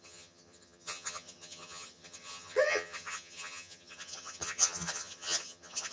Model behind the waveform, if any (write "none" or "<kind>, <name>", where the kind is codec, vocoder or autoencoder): vocoder, HiFi-GAN